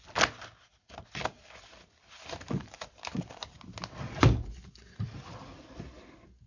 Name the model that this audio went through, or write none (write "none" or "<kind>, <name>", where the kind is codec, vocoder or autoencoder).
none